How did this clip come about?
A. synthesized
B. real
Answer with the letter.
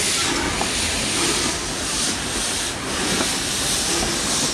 B